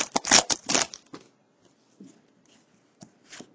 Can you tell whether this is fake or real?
real